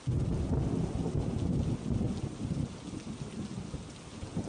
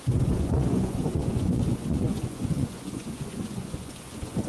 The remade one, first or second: second